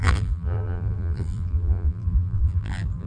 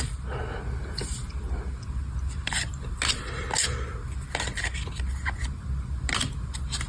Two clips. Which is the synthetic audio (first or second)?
first